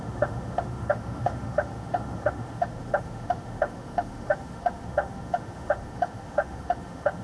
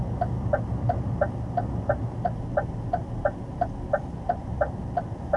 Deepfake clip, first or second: first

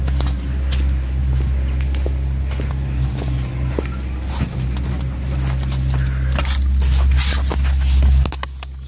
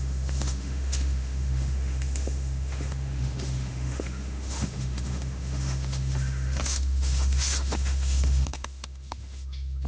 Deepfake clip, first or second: second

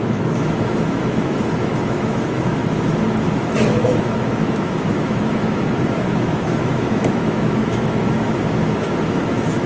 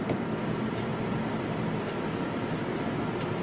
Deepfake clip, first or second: first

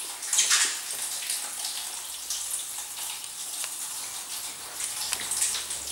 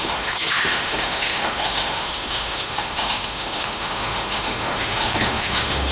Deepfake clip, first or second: second